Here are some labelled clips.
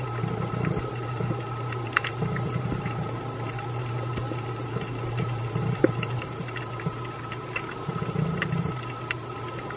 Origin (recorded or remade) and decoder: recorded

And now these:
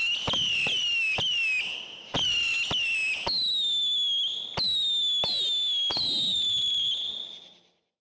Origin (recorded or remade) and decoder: recorded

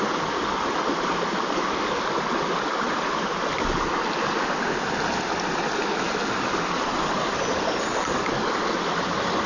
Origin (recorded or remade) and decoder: recorded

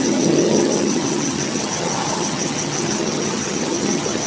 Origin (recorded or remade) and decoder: remade, vocoder, HiFi-GAN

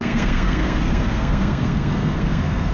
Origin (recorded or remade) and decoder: remade, codec, SNAC